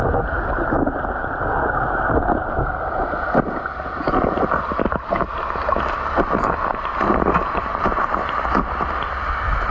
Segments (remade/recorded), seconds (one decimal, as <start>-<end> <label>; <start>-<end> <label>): 0.0-9.7 recorded